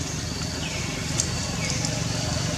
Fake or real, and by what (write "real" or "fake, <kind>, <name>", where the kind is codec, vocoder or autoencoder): real